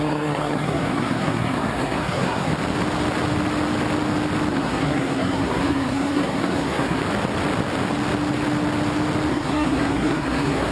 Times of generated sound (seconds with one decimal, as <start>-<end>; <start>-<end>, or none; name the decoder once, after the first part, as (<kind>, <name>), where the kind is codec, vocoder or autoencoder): 0.0-2.5 (codec, SNAC); 4.5-7.0; 9.3-10.7